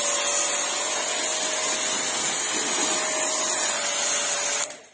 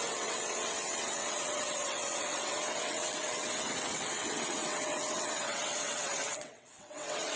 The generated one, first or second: second